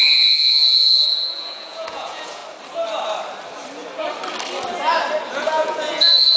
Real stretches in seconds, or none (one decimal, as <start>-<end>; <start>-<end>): 2.4-5.3